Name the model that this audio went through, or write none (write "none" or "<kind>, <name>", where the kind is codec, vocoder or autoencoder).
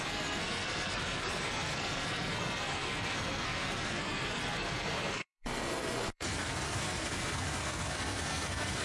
codec, SNAC